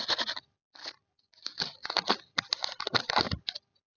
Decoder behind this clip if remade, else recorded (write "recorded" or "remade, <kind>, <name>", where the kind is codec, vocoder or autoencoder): recorded